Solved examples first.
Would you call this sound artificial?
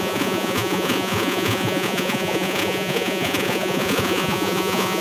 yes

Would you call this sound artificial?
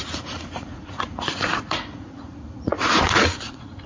yes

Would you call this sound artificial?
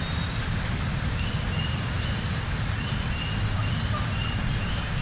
no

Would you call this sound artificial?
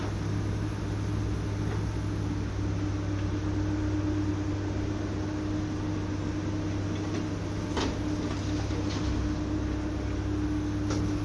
no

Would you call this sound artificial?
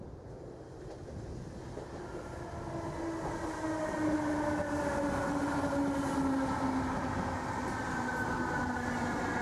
no